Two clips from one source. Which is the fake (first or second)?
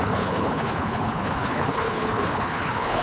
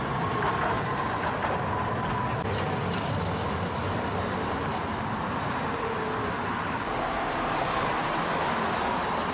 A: first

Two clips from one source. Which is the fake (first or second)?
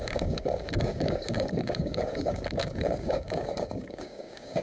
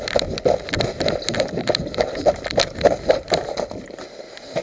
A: first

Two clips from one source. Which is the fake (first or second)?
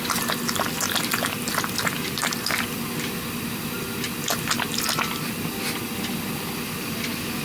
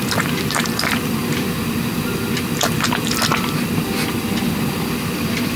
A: second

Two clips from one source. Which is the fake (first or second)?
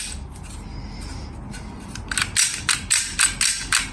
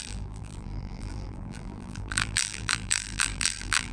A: second